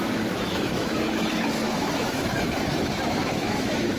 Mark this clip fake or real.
fake